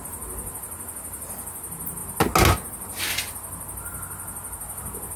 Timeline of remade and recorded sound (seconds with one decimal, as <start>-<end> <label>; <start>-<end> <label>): 0.0-5.2 recorded